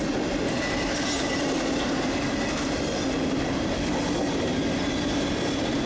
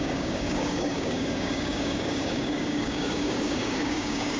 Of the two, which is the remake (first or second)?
second